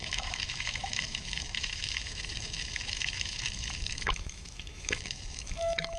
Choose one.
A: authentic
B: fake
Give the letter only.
B